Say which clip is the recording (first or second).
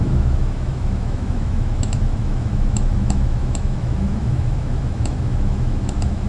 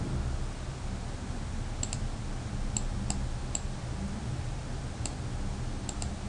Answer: second